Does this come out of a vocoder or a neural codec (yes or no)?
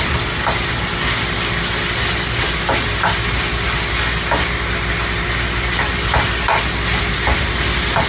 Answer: no